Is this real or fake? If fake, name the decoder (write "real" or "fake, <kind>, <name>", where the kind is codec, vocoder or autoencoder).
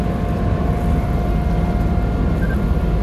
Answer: real